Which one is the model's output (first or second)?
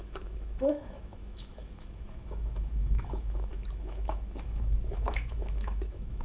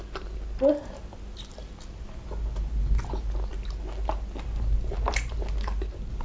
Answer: first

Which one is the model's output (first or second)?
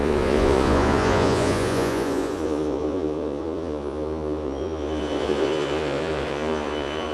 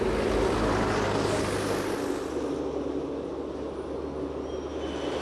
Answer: first